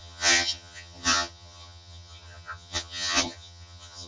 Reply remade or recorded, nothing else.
remade